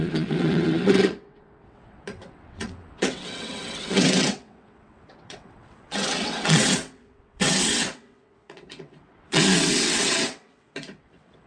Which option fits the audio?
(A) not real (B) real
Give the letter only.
A